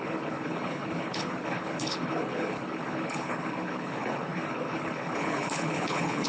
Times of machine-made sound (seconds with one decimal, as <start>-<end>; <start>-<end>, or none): 0.0-6.3

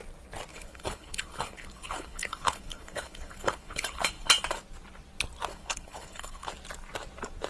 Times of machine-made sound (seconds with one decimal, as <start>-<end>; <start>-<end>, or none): 0.5-4.3; 5.5-6.5

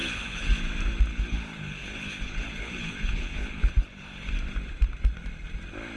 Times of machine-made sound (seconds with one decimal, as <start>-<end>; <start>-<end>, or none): 0.0-0.6; 1.1-4.3

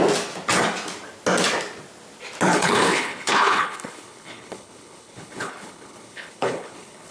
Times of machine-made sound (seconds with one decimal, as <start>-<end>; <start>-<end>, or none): 2.5-7.1

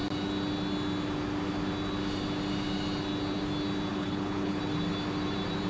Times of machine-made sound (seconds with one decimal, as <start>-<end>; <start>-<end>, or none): 3.9-4.6